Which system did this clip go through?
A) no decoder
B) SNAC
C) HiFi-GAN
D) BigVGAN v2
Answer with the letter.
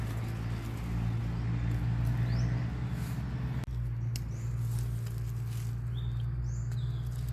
A